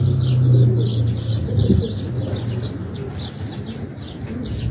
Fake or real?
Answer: real